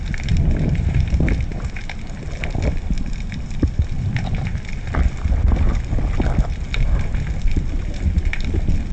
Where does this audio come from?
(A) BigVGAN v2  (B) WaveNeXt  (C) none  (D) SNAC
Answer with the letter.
C